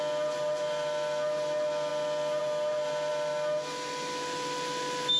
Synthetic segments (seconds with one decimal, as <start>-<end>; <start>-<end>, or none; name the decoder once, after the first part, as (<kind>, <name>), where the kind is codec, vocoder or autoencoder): none

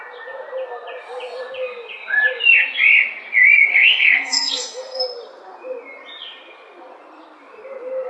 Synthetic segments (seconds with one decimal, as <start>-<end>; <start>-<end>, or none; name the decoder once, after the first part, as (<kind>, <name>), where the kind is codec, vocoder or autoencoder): 3.7-5.0 (codec, SNAC)

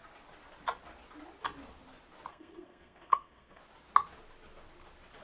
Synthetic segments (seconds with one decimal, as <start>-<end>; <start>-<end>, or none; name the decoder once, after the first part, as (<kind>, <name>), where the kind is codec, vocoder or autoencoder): 2.3-3.6 (codec, SNAC)